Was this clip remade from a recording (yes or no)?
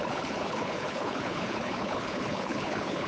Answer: yes